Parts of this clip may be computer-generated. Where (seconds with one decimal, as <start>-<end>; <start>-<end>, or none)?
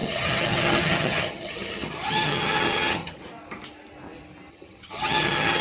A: 0.0-3.2; 4.5-5.6